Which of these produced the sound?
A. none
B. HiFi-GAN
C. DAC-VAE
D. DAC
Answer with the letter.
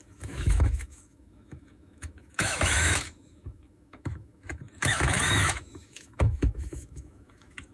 C